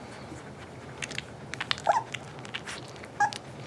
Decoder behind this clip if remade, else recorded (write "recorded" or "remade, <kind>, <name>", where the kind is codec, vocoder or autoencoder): recorded